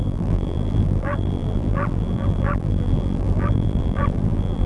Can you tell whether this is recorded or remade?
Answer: remade